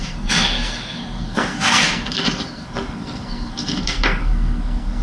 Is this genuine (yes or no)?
no